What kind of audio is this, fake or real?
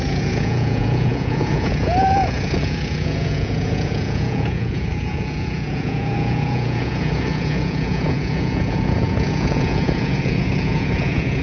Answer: fake